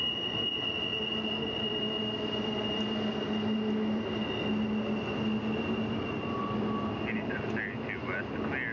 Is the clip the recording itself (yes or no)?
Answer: yes